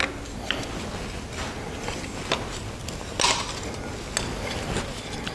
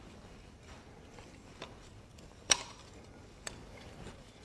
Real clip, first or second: first